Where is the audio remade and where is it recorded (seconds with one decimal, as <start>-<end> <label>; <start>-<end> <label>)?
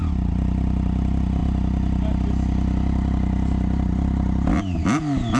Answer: 0.0-5.4 recorded